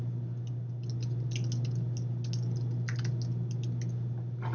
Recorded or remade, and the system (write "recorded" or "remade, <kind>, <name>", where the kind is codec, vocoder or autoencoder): recorded